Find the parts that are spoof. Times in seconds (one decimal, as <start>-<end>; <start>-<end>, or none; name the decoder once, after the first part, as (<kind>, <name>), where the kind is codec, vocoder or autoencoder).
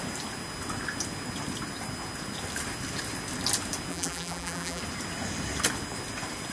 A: 3.9-4.8 (vocoder, BigVGAN v2)